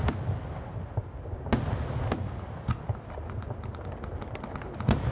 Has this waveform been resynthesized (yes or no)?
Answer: no